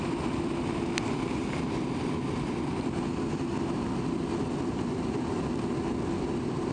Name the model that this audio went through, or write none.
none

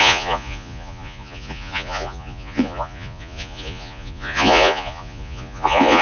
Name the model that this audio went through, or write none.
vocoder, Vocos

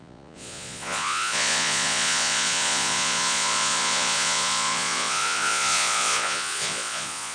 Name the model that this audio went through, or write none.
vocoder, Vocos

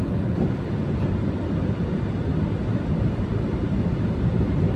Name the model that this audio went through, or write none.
none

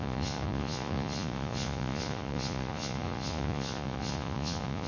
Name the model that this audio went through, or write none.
vocoder, Vocos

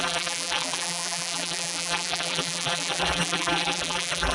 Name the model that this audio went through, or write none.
vocoder, BigVGAN v2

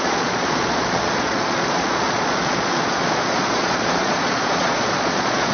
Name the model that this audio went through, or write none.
vocoder, Vocos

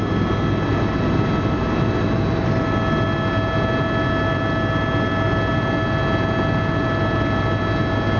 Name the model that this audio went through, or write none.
none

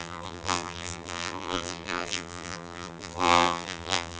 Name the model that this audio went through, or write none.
vocoder, BigVGAN v2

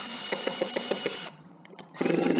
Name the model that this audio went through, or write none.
vocoder, HiFi-GAN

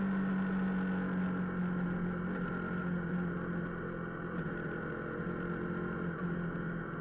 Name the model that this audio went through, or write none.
none